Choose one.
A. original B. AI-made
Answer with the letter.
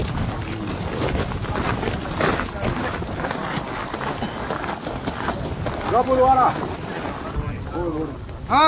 A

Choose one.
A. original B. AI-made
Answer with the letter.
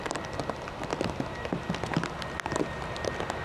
A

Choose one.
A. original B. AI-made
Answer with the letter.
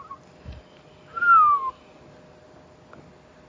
A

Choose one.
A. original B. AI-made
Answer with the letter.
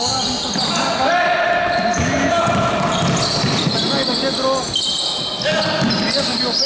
A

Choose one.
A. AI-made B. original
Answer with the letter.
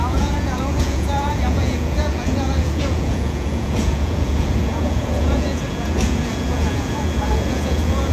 A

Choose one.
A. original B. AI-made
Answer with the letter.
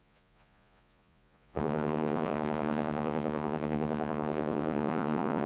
B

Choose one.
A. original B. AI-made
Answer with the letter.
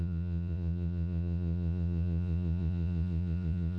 B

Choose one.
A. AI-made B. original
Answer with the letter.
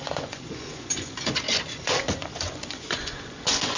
A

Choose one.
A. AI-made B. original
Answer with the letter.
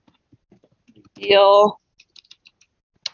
B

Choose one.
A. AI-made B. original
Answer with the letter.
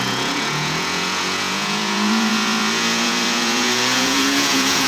A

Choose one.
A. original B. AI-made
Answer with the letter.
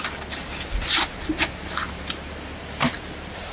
A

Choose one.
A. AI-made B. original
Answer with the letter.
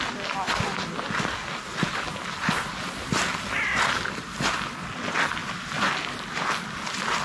B